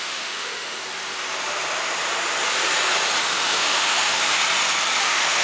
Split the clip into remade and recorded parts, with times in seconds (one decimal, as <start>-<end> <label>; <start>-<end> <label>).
0.0-0.8 remade; 0.8-3.2 recorded; 3.2-4.4 remade; 4.4-5.0 recorded; 5.0-5.4 remade